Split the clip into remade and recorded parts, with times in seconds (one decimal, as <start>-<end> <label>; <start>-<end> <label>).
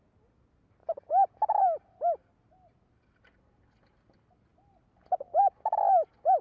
0.0-6.4 recorded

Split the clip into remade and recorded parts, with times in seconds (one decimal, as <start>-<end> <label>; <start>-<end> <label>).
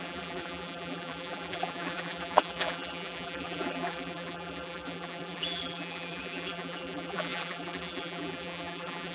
0.0-9.1 remade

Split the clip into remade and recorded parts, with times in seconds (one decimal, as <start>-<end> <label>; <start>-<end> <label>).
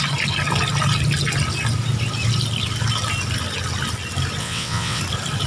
0.0-4.4 recorded; 4.4-5.0 remade; 5.0-5.5 recorded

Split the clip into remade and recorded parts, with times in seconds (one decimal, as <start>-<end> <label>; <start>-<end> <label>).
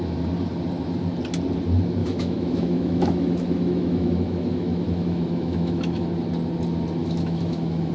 0.0-2.0 recorded; 2.0-6.1 remade; 6.1-7.0 recorded; 7.0-7.9 remade